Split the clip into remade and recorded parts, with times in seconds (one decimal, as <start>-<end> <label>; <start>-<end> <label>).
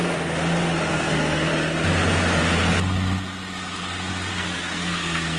0.0-0.9 recorded; 0.9-1.5 remade; 1.5-4.3 recorded; 4.3-5.4 remade